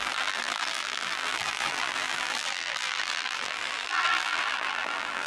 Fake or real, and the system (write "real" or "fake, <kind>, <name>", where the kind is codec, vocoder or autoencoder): fake, vocoder, BigVGAN v2